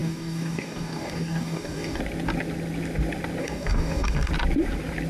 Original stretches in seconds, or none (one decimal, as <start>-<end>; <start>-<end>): 2.0-3.4; 4.3-5.1